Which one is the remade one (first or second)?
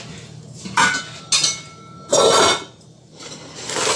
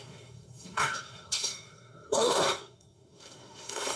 second